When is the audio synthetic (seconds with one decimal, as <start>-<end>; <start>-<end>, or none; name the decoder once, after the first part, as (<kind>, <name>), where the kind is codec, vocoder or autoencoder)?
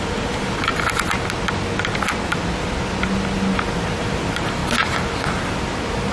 0.0-0.7 (vocoder, BigVGAN v2); 4.0-4.6